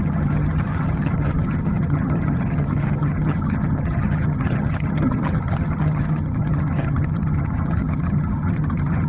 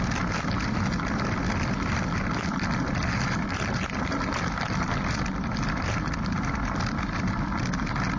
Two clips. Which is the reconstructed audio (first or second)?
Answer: first